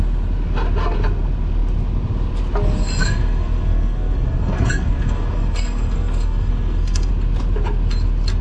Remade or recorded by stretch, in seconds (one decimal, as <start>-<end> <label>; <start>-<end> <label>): 0.0-3.0 recorded; 3.0-7.1 remade; 7.1-8.4 recorded